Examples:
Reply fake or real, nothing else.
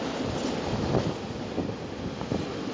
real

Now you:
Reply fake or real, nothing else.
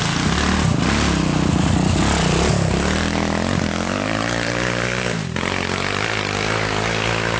real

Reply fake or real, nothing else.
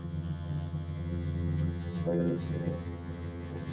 fake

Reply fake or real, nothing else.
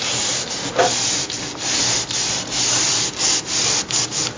real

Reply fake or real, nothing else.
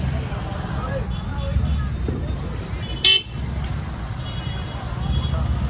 real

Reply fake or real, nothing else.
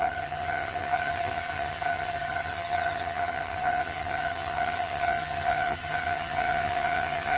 fake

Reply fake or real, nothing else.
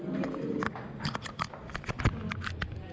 real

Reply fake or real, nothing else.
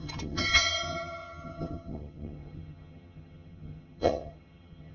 fake